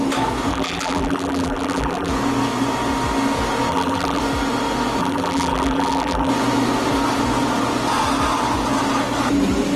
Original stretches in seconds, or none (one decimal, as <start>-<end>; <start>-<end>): 0.0-0.5; 2.1-3.7; 4.2-5.0; 6.3-9.8